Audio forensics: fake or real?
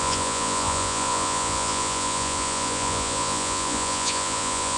fake